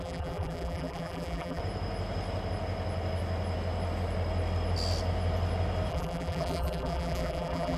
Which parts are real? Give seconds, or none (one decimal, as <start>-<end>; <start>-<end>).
1.6-5.9